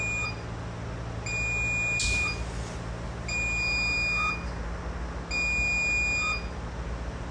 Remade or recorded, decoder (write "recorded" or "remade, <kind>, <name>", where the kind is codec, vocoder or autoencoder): recorded